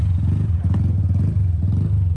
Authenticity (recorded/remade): recorded